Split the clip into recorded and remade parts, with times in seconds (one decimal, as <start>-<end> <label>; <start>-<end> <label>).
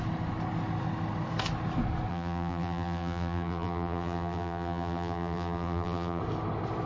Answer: 0.0-2.1 recorded; 2.1-6.2 remade; 6.2-6.9 recorded